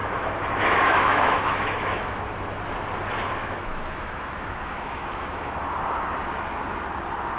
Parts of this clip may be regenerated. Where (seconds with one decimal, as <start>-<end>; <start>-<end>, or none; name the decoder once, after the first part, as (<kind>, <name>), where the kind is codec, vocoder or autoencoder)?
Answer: 0.0-2.2 (autoencoder, DAC-VAE); 3.4-5.5